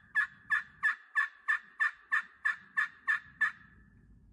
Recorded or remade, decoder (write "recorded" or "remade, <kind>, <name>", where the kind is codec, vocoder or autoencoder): recorded